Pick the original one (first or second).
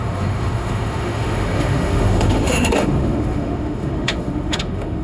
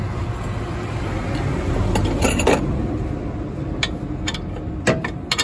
second